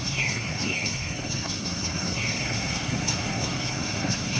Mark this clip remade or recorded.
remade